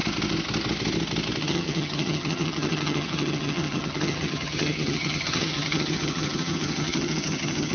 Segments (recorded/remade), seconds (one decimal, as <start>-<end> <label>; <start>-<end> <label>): 0.0-1.4 recorded; 1.4-7.7 remade